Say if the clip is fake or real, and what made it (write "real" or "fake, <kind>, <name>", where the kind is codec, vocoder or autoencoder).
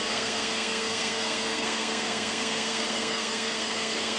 fake, codec, SNAC